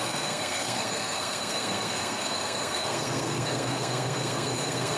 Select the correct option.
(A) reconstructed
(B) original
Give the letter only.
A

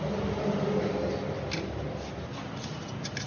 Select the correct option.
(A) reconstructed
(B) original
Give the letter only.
B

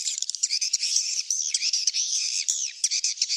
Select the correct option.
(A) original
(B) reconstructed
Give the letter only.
B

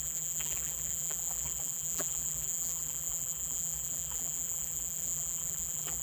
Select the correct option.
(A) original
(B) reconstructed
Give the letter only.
B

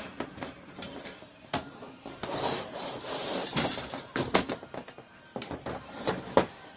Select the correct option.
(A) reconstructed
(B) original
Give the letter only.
A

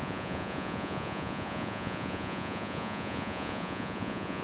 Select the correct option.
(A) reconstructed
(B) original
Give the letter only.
A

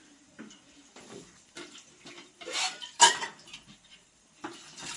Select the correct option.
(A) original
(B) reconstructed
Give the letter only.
B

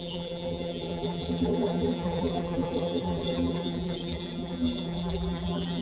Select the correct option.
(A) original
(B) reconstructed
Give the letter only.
B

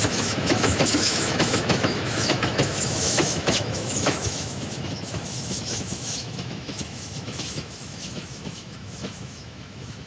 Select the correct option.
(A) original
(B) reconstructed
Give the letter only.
B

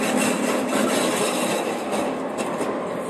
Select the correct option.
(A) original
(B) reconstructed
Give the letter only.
A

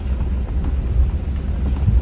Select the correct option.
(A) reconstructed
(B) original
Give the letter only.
B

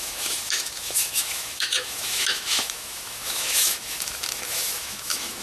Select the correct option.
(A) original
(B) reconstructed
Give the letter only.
B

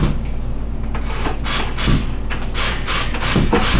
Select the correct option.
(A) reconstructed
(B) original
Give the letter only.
B